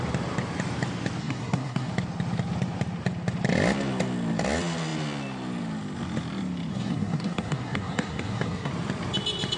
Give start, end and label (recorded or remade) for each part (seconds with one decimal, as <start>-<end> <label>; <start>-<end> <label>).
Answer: 0.0-1.2 recorded; 1.2-1.9 remade; 1.9-6.7 recorded; 6.7-8.7 remade; 8.7-9.6 recorded